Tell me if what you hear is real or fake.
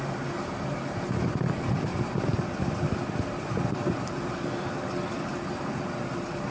real